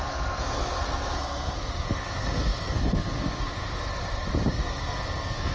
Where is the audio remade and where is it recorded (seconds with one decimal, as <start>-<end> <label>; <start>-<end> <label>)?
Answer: 0.0-3.8 remade; 3.8-4.5 recorded; 4.5-5.5 remade

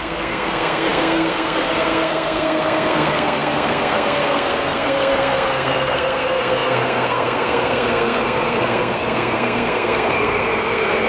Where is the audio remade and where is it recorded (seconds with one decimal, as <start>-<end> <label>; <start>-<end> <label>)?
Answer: 0.0-11.1 remade